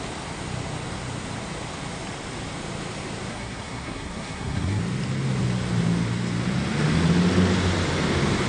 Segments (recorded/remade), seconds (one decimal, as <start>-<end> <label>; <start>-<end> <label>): 0.0-3.3 recorded; 3.3-4.8 remade; 4.8-8.5 recorded